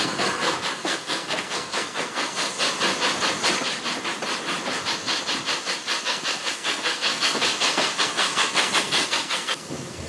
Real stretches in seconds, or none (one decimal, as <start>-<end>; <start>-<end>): 2.4-6.0